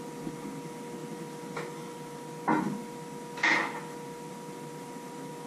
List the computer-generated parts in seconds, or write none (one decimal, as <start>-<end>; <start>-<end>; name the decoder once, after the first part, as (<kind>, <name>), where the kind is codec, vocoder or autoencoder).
none